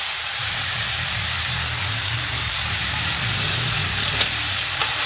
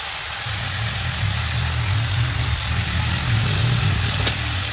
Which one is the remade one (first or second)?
first